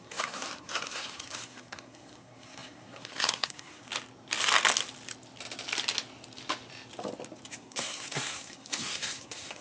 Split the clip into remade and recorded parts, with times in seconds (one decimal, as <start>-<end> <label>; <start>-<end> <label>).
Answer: 0.0-3.9 remade; 3.9-7.5 recorded; 7.5-9.6 remade